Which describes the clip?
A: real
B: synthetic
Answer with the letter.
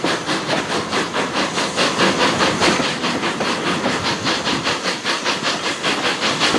B